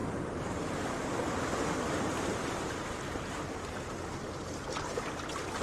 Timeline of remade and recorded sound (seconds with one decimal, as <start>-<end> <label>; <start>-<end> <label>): 0.0-3.4 remade; 3.4-5.6 recorded